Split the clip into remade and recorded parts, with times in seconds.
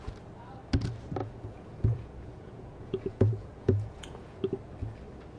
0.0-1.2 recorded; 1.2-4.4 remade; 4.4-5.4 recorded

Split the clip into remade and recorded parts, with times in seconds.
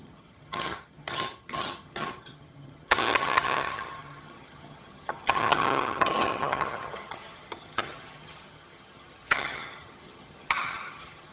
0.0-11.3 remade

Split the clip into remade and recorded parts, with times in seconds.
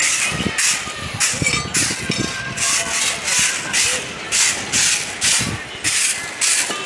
0.0-6.9 recorded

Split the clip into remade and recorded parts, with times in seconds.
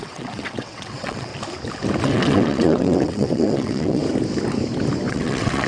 0.0-1.3 remade; 1.3-2.0 recorded; 2.0-4.0 remade; 4.0-5.1 recorded; 5.1-5.7 remade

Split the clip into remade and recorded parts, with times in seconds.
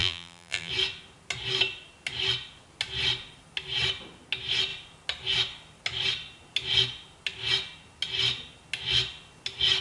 0.0-0.7 remade; 0.7-9.8 recorded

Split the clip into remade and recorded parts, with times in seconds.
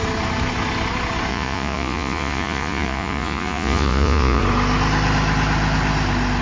0.0-1.3 recorded; 1.3-4.4 remade; 4.4-6.4 recorded